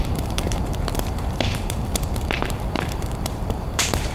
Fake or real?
fake